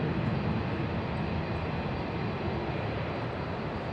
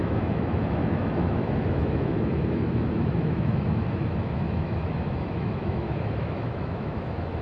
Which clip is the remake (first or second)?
second